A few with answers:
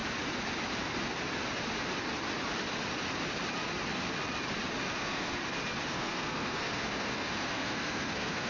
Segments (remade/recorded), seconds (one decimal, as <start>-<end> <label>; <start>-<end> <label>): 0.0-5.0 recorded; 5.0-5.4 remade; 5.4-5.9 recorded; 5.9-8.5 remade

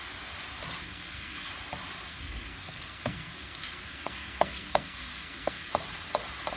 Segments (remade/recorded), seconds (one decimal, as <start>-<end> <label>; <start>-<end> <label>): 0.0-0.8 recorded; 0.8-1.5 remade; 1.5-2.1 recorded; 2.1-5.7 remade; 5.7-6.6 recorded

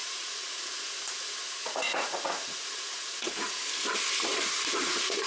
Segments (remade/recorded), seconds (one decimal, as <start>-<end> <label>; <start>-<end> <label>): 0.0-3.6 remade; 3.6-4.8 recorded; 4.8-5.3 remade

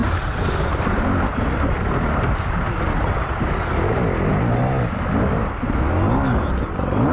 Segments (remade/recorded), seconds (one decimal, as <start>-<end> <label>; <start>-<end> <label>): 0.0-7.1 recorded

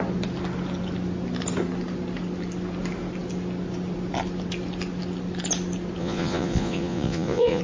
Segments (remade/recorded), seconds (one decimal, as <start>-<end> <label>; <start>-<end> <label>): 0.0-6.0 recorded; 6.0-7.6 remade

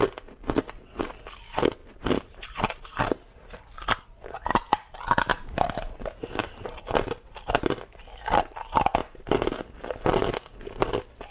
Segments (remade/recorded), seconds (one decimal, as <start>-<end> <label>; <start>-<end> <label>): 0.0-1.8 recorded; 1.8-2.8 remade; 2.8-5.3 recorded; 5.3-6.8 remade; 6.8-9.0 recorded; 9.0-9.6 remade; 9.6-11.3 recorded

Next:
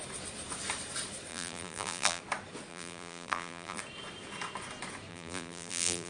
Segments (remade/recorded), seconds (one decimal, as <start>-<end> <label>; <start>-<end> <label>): 0.0-1.3 recorded; 1.3-2.2 remade; 2.2-2.7 recorded; 2.7-3.8 remade; 3.8-5.1 recorded; 5.1-6.1 remade

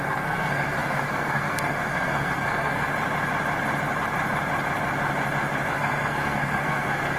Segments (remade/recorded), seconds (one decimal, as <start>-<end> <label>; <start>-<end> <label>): 0.0-2.9 remade; 2.9-5.7 recorded; 5.7-7.2 remade